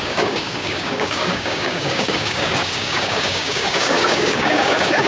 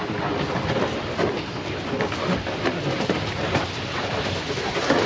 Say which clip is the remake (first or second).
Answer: first